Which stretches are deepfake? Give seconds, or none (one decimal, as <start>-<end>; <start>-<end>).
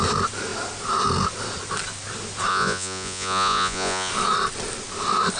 2.5-4.1